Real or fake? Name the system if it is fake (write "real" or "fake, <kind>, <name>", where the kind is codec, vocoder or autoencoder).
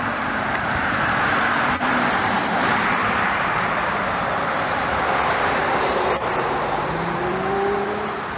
fake, vocoder, BigVGAN v2